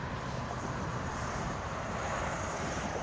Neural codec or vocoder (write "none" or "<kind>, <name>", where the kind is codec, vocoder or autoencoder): vocoder, BigVGAN v2